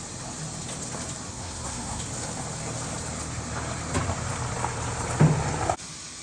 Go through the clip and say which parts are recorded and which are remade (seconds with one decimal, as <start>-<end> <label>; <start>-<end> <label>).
0.0-1.3 recorded; 1.3-2.0 remade; 2.0-6.2 recorded